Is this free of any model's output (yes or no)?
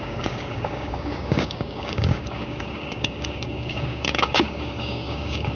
no